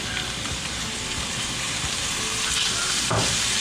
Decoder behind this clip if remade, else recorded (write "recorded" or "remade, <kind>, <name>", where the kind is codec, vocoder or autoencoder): recorded